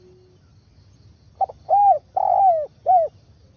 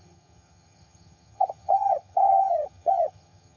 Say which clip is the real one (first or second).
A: first